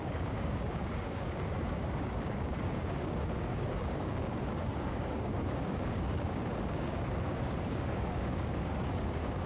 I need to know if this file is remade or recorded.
remade